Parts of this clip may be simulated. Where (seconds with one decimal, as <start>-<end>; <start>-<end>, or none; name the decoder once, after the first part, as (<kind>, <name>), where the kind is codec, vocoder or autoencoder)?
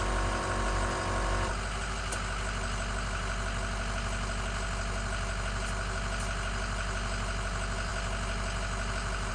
none